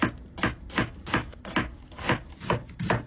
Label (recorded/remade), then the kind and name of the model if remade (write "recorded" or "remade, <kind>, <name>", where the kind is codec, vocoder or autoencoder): recorded